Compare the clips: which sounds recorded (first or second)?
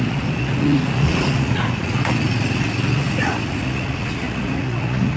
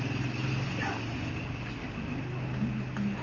second